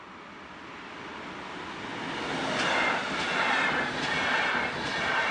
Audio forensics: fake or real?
real